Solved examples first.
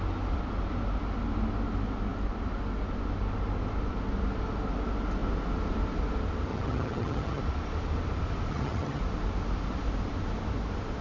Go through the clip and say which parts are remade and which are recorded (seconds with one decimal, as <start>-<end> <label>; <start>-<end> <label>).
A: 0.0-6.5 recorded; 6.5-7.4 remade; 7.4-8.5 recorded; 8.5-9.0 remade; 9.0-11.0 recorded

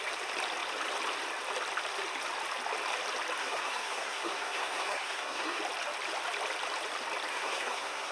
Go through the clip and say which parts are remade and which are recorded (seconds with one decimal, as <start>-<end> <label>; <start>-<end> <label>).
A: 0.0-3.4 recorded; 3.4-5.6 remade; 5.6-7.3 recorded; 7.3-8.1 remade

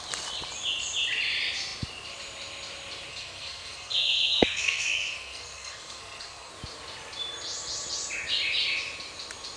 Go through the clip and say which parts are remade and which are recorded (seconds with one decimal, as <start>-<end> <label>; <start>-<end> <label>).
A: 0.0-3.1 recorded; 3.1-6.5 remade; 6.5-9.6 recorded